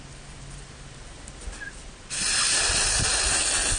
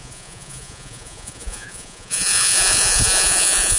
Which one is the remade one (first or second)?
second